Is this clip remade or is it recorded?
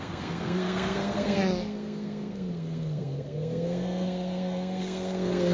remade